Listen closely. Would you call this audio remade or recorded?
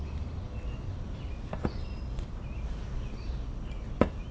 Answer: recorded